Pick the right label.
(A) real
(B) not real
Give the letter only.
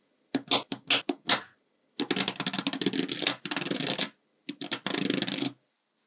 A